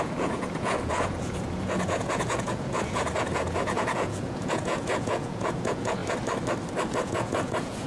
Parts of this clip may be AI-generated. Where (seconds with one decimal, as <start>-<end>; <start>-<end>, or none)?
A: 0.0-6.0; 6.9-7.9